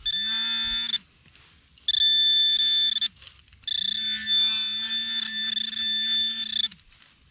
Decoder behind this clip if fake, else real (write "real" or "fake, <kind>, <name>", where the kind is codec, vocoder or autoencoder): real